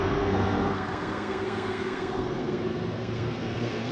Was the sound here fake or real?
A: fake